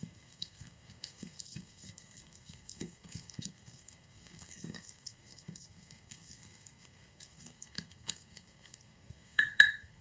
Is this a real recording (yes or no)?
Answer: no